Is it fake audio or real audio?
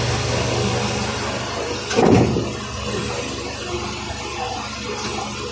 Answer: real